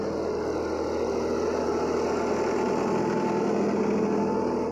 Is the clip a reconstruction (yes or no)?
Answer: no